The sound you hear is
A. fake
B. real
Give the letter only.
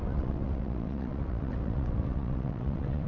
A